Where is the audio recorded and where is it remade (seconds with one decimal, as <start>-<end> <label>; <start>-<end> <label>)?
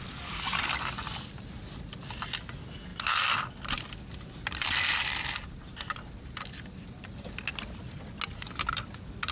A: 0.0-9.3 recorded